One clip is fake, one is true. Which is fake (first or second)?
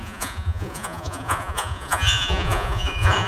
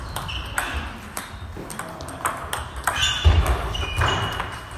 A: first